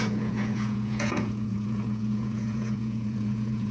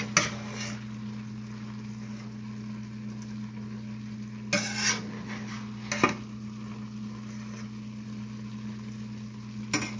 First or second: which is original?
second